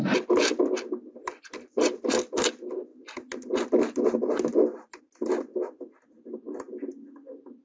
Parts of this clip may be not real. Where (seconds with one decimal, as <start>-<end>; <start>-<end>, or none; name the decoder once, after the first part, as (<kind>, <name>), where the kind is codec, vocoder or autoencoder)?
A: none